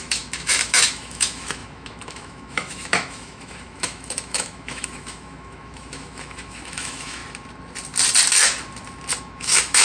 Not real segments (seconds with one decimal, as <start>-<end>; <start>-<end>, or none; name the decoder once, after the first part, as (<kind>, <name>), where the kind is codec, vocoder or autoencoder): 0.0-7.2 (autoencoder, DAC-VAE); 9.2-9.8